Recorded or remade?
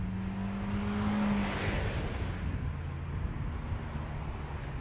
recorded